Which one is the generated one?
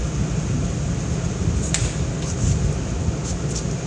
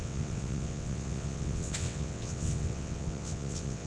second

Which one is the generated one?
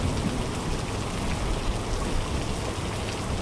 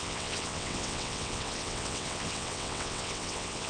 second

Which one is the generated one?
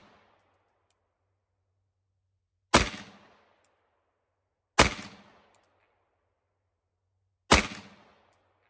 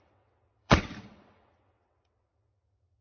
second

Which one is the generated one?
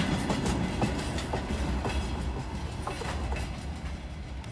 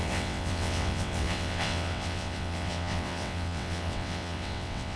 second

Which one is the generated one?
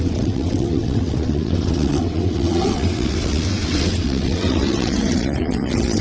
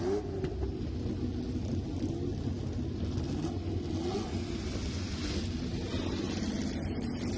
first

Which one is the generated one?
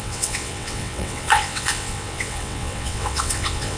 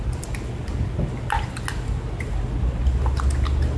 first